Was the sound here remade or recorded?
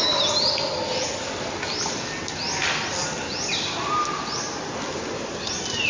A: recorded